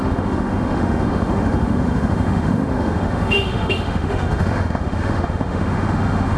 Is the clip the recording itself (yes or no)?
no